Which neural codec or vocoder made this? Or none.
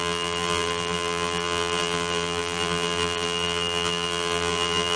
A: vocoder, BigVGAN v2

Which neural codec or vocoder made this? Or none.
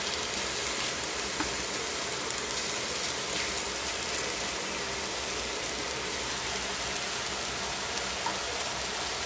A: none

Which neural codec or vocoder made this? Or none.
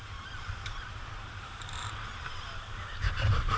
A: vocoder, BigVGAN v2